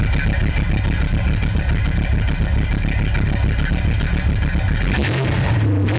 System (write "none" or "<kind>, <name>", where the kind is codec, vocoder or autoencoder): none